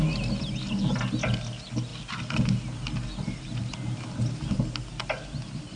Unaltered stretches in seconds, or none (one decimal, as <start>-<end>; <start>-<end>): 0.0-5.8